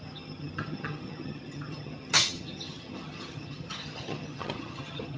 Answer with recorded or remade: remade